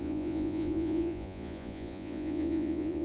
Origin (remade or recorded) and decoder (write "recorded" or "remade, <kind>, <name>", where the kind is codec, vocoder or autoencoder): remade, vocoder, Vocos